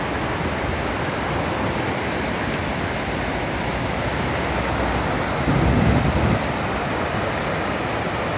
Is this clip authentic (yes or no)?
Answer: yes